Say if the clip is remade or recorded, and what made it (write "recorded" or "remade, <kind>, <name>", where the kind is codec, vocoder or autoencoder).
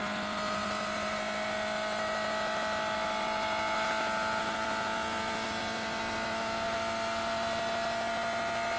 recorded